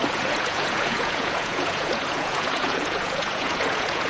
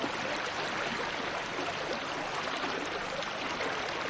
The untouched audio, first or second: second